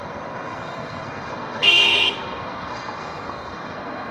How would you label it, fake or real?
fake